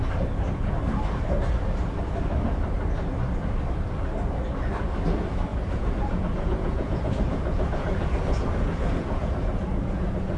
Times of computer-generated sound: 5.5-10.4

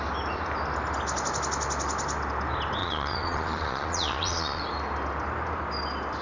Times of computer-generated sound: 2.8-4.6

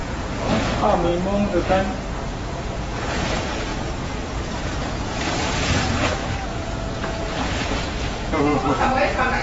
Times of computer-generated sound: 0.0-1.1; 2.5-9.4

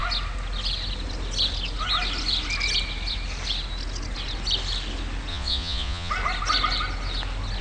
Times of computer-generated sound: 5.3-6.1